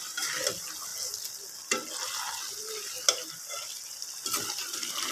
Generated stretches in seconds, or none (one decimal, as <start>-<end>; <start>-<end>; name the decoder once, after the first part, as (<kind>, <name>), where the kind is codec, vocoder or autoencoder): none